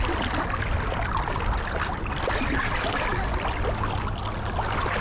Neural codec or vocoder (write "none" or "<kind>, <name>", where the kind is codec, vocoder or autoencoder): none